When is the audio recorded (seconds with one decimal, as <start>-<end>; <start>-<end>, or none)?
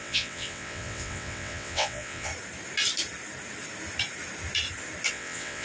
2.3-5.1